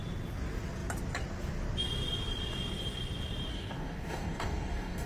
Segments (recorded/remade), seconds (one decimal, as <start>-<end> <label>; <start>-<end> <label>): 0.0-3.5 recorded; 3.5-5.1 remade

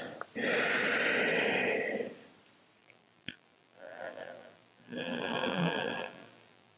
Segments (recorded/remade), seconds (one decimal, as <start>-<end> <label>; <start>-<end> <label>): 0.0-2.8 recorded; 2.8-6.8 remade

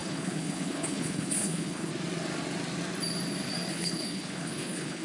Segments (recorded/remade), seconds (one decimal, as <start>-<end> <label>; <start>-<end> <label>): 0.0-1.9 remade; 1.9-3.7 recorded; 3.7-5.0 remade

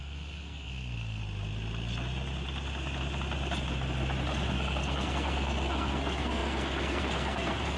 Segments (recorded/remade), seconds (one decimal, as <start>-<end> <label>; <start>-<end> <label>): 0.0-1.2 remade; 1.2-4.5 recorded; 4.5-7.8 remade

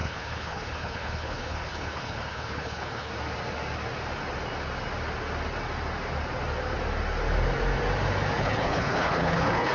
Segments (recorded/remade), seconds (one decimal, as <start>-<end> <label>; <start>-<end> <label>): 0.0-3.1 remade; 3.1-8.4 recorded; 8.4-9.7 remade

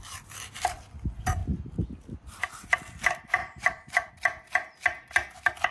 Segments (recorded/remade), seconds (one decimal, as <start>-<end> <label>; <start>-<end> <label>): 0.0-3.4 recorded; 3.4-4.1 remade; 4.1-5.7 recorded